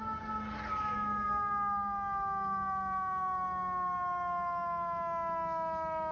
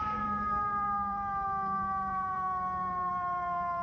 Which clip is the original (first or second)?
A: first